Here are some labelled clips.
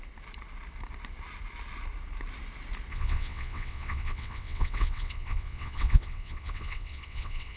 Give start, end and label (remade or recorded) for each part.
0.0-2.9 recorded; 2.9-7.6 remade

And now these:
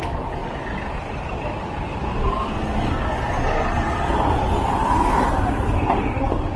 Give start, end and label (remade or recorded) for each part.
0.0-6.6 recorded

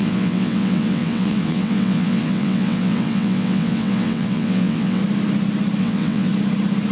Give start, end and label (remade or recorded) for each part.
0.0-5.0 remade; 5.0-5.8 recorded; 5.8-6.3 remade; 6.3-6.9 recorded

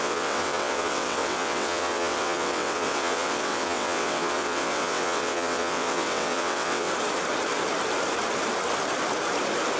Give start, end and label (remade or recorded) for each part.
0.0-6.9 remade; 6.9-9.8 recorded

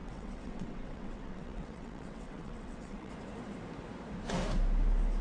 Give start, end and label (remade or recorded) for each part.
0.0-3.1 remade; 3.1-5.2 recorded

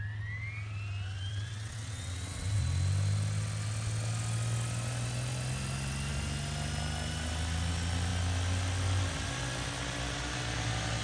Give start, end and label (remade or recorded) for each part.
0.0-1.3 recorded; 1.3-2.6 remade; 2.6-11.0 recorded